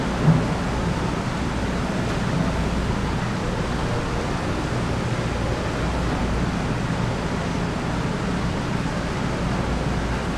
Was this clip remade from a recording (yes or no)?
no